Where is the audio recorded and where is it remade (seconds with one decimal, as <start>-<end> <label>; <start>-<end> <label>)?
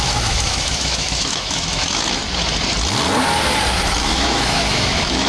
0.0-2.2 remade; 2.2-4.0 recorded; 4.0-5.3 remade